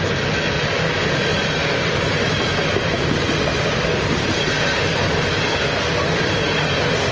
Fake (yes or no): no